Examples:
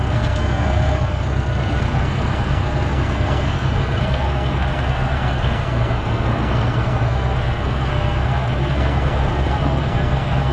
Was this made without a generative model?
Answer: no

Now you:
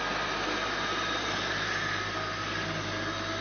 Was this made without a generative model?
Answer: yes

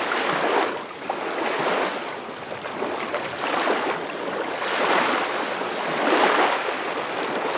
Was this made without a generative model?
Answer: yes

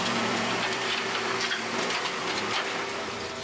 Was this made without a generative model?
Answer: no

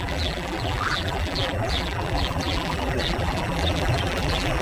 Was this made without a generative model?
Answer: no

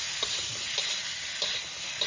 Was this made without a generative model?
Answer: yes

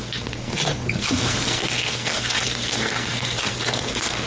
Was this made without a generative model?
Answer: no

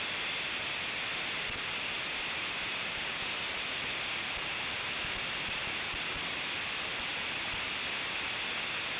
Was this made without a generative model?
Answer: yes